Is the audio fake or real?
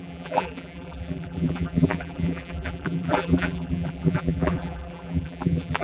fake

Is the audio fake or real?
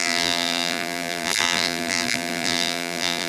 fake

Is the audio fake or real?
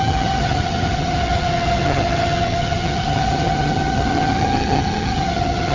fake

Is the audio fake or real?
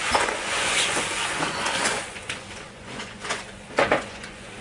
fake